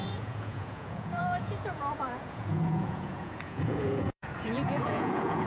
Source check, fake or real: fake